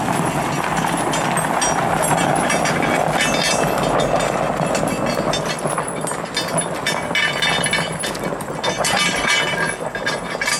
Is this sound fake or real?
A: real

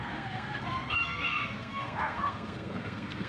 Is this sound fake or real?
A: fake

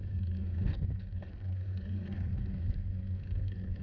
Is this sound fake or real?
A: fake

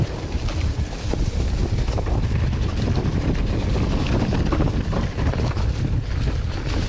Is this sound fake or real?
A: real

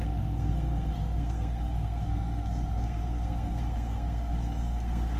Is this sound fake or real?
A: fake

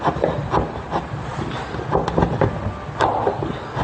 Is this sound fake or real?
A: real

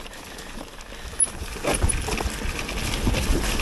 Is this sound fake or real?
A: real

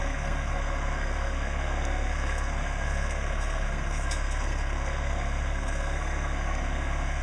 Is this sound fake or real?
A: fake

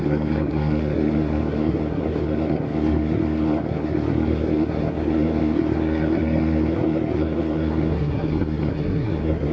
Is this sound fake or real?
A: fake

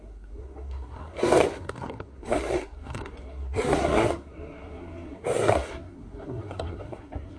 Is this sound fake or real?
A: fake